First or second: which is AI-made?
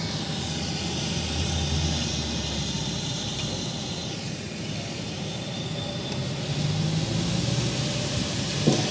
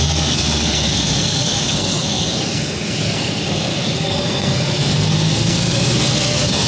second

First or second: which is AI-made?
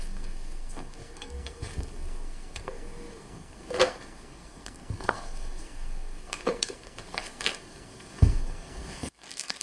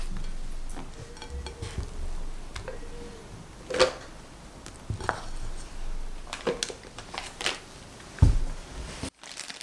first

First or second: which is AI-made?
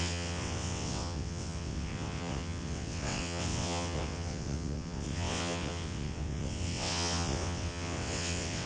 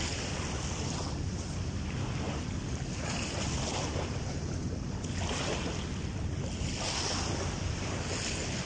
first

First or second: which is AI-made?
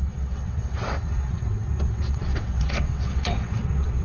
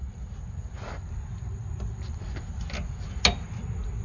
first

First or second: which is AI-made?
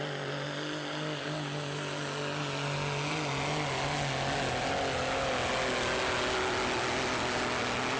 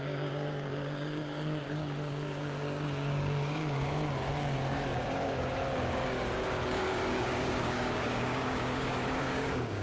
second